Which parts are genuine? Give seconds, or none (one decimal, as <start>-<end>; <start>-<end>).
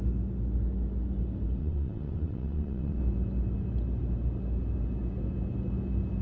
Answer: 0.0-1.6; 3.0-6.2